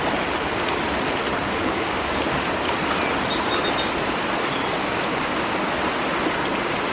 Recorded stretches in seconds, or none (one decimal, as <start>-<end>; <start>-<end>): 0.0-1.6; 2.3-4.8; 5.8-6.9